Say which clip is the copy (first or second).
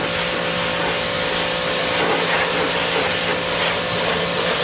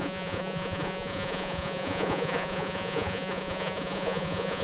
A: second